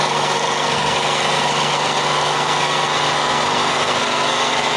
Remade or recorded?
remade